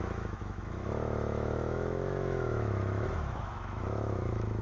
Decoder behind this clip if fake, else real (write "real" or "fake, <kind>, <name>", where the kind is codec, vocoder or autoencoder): fake, autoencoder, DAC-VAE